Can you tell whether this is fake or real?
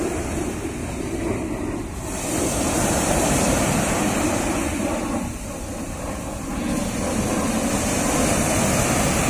real